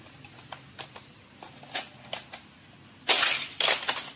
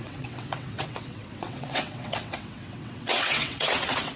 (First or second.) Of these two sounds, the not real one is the second